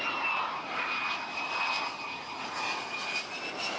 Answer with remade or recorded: recorded